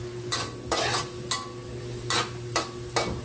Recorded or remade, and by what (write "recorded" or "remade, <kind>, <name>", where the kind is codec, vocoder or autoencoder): recorded